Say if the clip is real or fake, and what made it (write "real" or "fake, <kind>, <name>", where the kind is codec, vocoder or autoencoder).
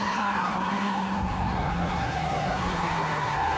fake, codec, SNAC